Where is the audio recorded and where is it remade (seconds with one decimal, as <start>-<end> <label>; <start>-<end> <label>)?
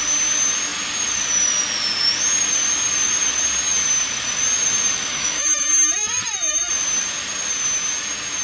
0.0-5.1 recorded; 5.1-6.7 remade; 6.7-8.4 recorded